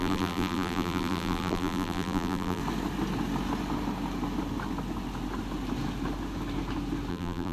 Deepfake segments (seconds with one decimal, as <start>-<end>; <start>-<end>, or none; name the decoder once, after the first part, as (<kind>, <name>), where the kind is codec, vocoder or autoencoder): 0.0-2.6 (vocoder, BigVGAN v2); 7.1-7.5